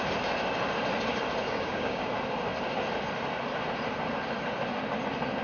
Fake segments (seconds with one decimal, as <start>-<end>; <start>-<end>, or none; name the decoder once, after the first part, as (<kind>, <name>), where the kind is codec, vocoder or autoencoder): 1.4-2.1 (codec, DAC)